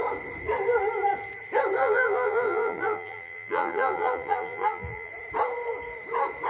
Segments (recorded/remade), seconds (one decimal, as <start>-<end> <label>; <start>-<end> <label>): 0.0-1.8 recorded; 1.8-5.1 remade; 5.1-6.5 recorded